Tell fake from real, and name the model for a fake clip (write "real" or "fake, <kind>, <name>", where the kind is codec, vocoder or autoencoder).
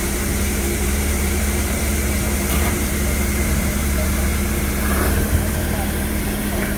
fake, vocoder, BigVGAN v2